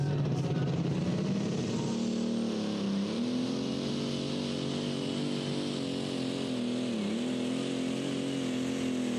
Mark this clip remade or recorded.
recorded